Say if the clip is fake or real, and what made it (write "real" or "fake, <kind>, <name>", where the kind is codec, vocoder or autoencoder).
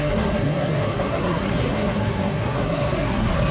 fake, codec, SNAC